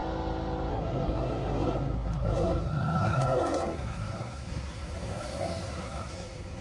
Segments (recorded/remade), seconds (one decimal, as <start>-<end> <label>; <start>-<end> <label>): 0.0-0.7 recorded; 0.7-6.6 remade